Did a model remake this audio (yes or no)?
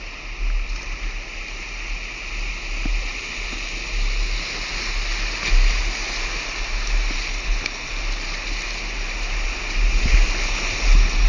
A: no